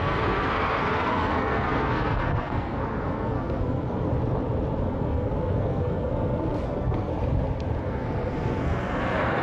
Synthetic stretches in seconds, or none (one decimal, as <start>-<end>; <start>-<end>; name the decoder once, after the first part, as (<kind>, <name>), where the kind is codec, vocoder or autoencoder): 0.0-4.1 (codec, SNAC); 4.8-7.1; 7.8-9.4